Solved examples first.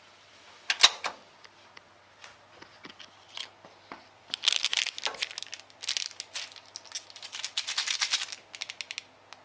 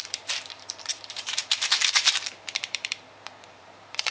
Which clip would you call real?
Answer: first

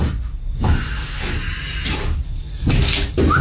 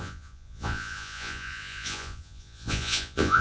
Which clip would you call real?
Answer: first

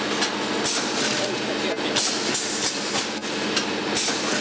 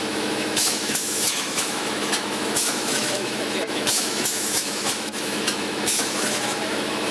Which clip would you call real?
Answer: first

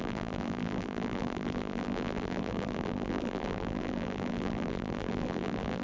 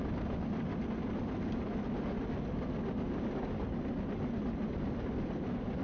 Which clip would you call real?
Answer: second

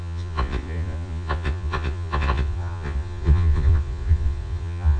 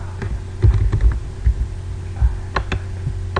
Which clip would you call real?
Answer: second